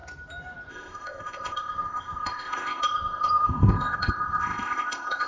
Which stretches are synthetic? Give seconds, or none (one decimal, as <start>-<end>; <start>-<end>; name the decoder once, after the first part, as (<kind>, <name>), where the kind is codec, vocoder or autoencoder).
0.7-5.3 (codec, ZipCodec)